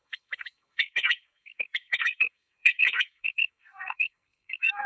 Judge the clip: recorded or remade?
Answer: remade